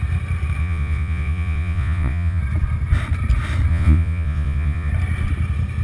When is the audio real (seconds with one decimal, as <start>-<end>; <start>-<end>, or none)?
0.0-0.6; 2.4-3.7; 4.9-5.8